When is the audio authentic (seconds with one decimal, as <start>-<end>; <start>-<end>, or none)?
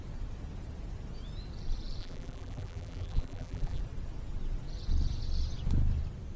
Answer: 0.0-2.0; 3.8-6.4